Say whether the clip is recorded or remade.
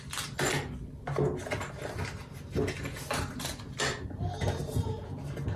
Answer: recorded